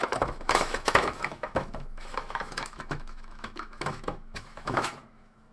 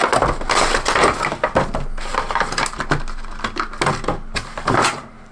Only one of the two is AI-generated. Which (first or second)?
first